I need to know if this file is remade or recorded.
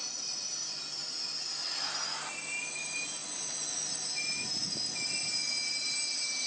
recorded